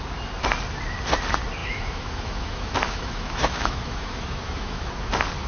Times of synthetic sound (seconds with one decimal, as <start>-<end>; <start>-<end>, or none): 1.6-4.9